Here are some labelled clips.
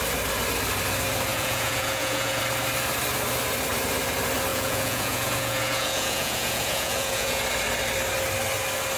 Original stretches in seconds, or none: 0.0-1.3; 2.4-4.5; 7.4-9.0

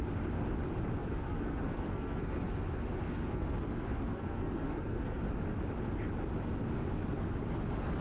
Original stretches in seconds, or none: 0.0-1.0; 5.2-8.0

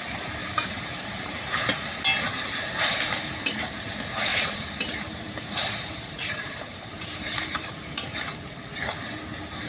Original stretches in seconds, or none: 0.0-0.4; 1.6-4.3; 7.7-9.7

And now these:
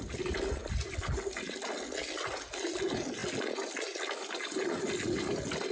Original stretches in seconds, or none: 0.0-5.7

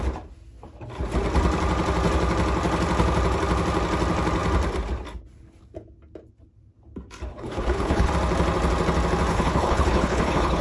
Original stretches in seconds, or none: 0.0-7.3; 8.1-9.3

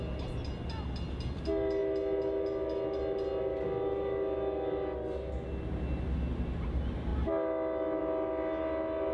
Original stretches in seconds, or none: 0.0-9.1

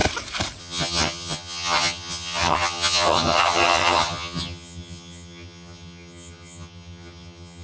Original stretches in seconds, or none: 0.0-0.6

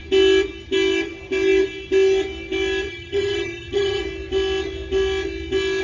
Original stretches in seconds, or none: 0.0-2.9; 4.0-5.8